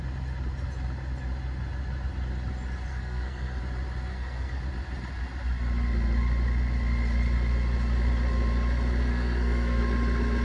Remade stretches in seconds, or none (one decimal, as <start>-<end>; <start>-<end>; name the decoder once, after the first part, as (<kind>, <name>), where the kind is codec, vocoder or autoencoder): 2.9-3.6 (codec, SNAC); 4.1-4.6; 9.1-9.8

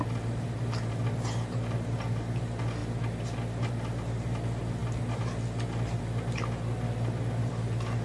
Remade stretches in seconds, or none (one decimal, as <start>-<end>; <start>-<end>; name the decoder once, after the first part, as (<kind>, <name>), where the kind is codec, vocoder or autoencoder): none

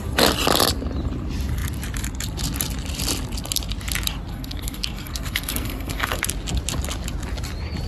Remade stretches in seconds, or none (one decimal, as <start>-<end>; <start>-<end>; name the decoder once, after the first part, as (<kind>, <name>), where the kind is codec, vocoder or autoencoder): 4.3-6.2 (codec, SNAC)

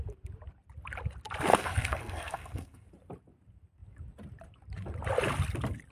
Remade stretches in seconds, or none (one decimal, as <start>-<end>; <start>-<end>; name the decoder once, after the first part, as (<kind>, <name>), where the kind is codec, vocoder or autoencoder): 1.5-2.9 (codec, SNAC)